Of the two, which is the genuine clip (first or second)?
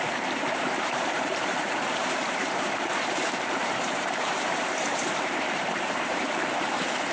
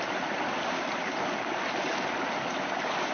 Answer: second